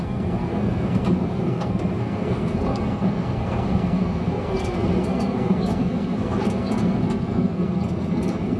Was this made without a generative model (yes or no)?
no